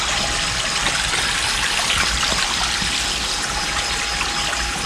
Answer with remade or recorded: recorded